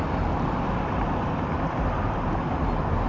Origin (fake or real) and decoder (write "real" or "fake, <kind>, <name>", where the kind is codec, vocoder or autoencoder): real